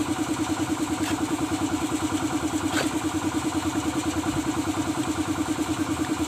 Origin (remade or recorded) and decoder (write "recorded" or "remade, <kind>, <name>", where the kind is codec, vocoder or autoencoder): recorded